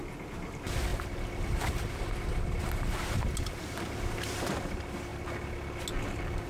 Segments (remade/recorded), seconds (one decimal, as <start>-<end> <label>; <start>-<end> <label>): 0.0-6.5 recorded